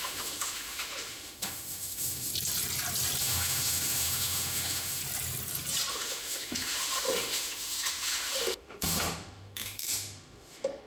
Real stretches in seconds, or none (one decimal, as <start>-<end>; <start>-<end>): 2.3-3.2; 5.0-5.9